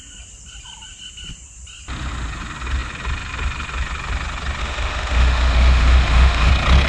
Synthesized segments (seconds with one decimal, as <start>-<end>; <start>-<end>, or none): 4.6-6.5